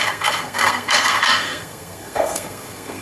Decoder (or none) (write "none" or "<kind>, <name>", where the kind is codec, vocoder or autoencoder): codec, SNAC